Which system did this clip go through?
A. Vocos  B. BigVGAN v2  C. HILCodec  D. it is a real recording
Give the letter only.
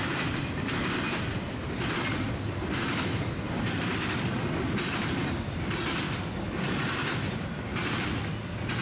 B